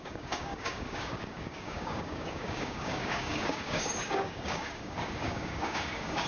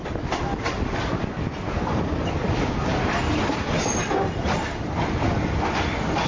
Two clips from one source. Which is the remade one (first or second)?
first